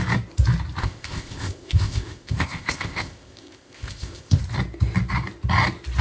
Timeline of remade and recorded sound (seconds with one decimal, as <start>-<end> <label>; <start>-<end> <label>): 0.0-0.8 recorded; 0.8-4.4 remade; 4.4-6.0 recorded